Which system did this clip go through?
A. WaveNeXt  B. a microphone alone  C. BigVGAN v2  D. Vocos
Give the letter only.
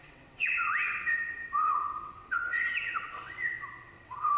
A